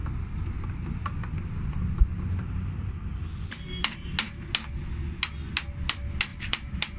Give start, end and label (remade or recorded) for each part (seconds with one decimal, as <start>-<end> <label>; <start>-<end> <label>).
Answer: 0.0-2.1 recorded; 2.1-2.7 remade; 2.7-6.3 recorded; 6.3-7.0 remade